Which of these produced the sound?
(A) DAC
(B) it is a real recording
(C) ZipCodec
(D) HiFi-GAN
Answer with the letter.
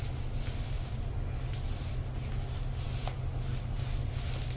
B